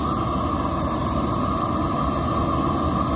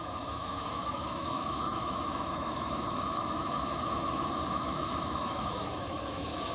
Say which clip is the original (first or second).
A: first